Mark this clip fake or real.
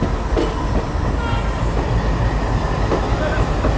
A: real